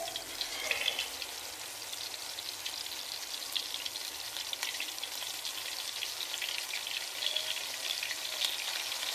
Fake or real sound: real